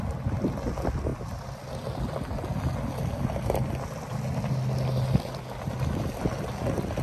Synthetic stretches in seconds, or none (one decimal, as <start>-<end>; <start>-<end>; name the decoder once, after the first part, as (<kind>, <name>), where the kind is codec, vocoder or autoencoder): none